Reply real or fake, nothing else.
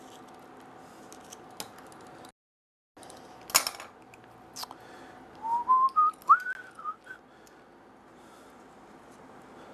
real